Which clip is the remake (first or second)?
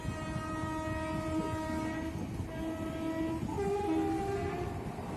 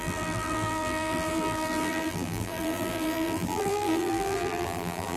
second